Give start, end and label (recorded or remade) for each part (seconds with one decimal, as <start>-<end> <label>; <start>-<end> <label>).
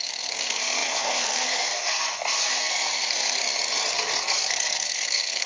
0.0-3.4 remade; 3.4-3.9 recorded; 3.9-5.5 remade